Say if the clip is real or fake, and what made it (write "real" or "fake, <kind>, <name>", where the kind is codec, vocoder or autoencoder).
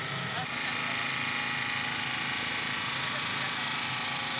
real